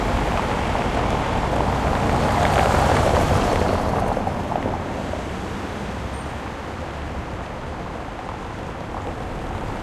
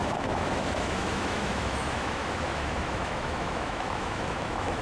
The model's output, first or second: second